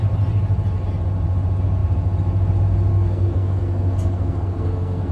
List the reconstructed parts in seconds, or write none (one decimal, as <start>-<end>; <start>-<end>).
2.9-5.1